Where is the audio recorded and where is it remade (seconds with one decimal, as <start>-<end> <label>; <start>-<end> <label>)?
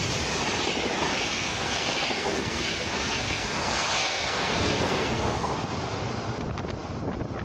0.0-1.1 recorded; 1.1-5.5 remade; 5.5-7.4 recorded